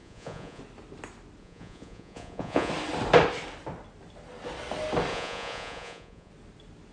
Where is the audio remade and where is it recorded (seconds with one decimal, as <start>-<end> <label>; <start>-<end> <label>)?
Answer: 0.0-0.6 remade; 0.6-1.4 recorded; 1.4-2.7 remade; 2.7-5.1 recorded; 5.1-6.3 remade; 6.3-6.9 recorded